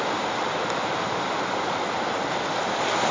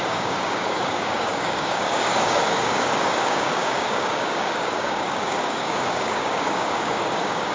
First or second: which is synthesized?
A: second